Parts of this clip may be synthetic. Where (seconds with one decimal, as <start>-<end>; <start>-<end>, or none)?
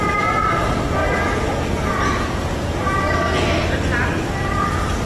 1.0-3.0